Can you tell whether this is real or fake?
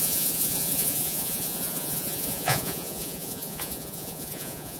fake